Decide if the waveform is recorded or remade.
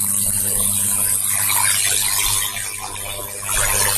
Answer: recorded